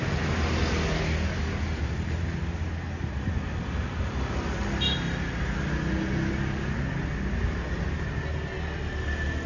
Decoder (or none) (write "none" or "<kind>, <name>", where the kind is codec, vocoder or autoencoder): none